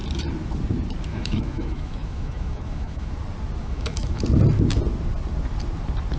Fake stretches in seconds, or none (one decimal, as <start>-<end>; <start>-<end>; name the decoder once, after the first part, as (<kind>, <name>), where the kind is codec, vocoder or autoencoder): 1.1-3.1 (autoencoder, DAC-VAE); 3.6-4.2